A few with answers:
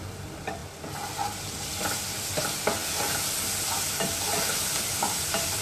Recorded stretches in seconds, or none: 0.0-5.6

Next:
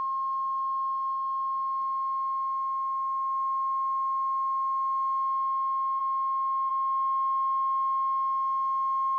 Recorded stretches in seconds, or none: 0.0-9.2

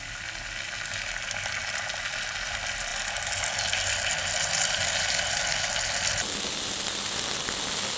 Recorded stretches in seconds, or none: 0.0-8.0

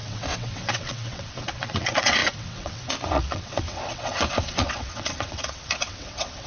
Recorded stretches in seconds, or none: none